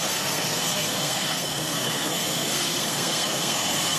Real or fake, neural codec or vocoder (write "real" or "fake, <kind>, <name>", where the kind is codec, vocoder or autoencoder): fake, codec, SNAC